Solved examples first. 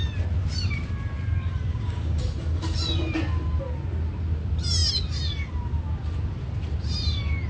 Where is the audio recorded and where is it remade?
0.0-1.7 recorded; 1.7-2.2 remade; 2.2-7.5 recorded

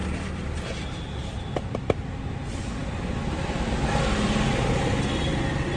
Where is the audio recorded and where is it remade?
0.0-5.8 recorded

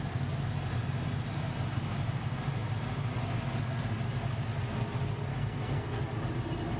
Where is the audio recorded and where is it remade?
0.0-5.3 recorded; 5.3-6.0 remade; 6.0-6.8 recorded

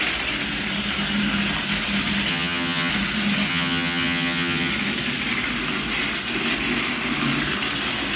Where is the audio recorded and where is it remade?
0.0-2.3 recorded; 2.3-2.9 remade; 2.9-3.5 recorded; 3.5-4.7 remade; 4.7-8.2 recorded